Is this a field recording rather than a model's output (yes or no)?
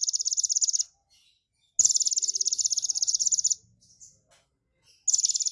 yes